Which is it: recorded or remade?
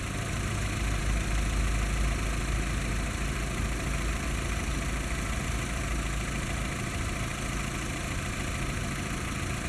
recorded